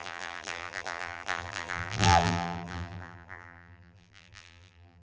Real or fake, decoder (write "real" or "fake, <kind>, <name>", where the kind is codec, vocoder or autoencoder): fake, vocoder, BigVGAN v2